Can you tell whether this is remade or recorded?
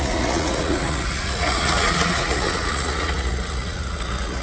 remade